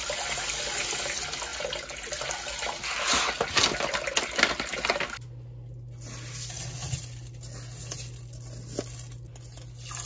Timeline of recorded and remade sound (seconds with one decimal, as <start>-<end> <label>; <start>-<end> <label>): 0.0-10.1 recorded